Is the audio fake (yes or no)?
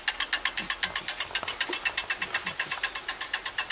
no